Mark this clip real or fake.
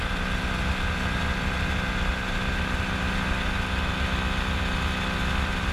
real